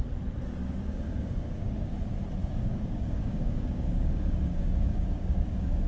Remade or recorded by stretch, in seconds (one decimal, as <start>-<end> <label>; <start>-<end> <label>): 0.0-0.6 recorded; 0.6-2.0 remade; 2.0-2.4 recorded; 2.4-5.9 remade